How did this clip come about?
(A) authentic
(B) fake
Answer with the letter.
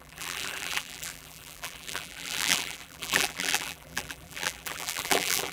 B